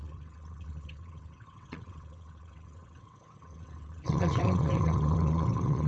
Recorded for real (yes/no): no